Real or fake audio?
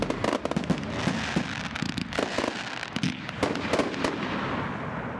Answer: real